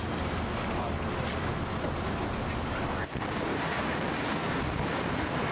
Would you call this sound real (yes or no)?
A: yes